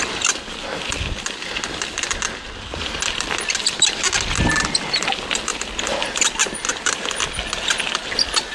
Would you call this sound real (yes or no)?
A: yes